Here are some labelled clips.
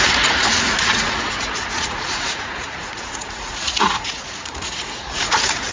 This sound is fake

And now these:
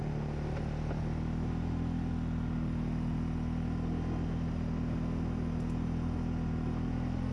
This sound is real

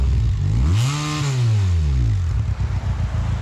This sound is real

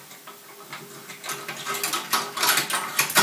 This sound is real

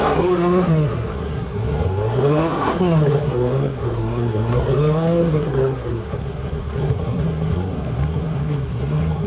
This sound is fake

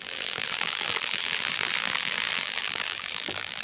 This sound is fake